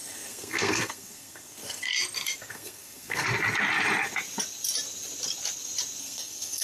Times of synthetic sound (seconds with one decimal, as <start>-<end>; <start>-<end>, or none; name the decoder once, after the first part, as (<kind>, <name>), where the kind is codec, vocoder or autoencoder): 0.0-1.9 (codec, SNAC); 2.5-3.3; 6.0-6.6

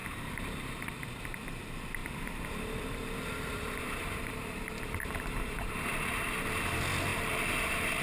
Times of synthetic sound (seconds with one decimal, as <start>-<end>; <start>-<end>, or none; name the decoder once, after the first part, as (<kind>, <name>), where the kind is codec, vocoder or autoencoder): 0.0-1.3 (vocoder, BigVGAN v2); 2.0-6.6; 7.1-8.0

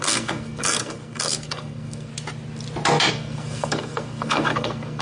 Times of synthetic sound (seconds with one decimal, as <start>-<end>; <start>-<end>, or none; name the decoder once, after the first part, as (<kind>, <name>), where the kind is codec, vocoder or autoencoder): 0.0-2.1 (codec, SNAC); 3.1-5.0